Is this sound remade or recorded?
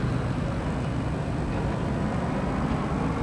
recorded